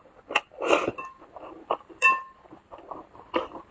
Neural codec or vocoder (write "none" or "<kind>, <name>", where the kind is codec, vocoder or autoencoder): none